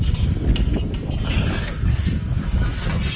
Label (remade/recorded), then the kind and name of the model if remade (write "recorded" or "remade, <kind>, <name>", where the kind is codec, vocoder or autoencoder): recorded